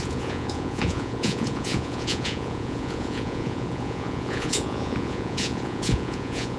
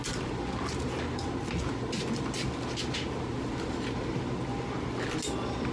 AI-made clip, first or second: first